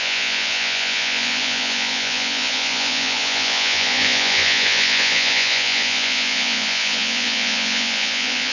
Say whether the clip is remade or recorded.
remade